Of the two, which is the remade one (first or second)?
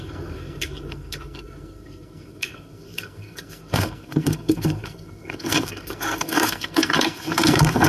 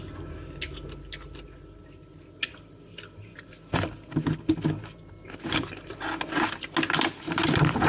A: first